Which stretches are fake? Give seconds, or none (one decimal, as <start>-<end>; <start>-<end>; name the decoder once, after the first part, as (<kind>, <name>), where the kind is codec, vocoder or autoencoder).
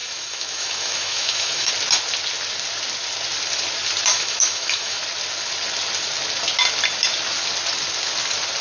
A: 0.0-1.7 (autoencoder, DAC-VAE); 4.1-5.0